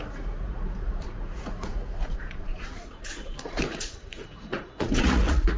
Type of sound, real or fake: fake